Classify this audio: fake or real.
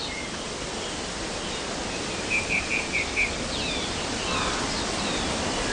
real